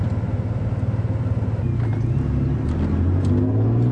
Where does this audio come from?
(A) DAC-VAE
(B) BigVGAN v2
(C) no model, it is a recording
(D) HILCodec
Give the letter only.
C